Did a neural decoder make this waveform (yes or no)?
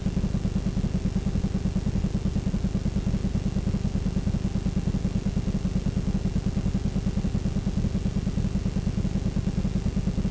no